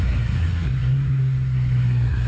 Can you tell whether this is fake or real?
fake